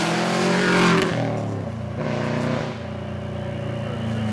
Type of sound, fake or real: real